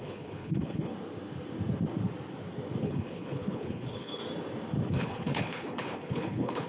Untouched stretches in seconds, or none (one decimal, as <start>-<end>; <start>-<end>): 0.9-2.8; 4.2-4.9

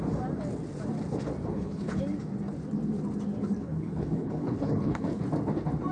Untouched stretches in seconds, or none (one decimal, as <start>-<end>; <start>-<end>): 0.0-1.5; 2.0-3.6; 5.2-5.9

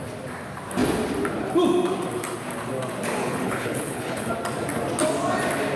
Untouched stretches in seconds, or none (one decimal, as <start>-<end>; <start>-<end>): 0.0-3.2; 4.3-5.8

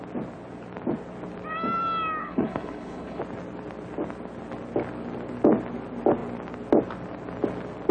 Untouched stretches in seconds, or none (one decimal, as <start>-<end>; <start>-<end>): 0.0-2.2; 3.2-7.9